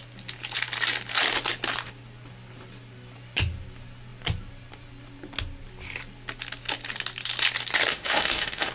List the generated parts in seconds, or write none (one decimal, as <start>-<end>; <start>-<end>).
7.9-8.7